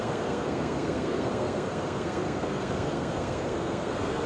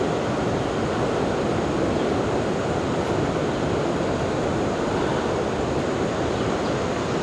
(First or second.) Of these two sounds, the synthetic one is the first